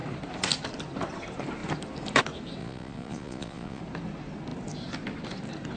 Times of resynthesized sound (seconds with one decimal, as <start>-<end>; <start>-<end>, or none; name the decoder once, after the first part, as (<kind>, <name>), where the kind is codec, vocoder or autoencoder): 2.6-3.8 (vocoder, Vocos)